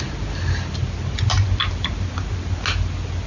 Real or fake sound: real